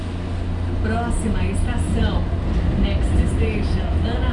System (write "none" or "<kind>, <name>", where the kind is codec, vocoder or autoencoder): none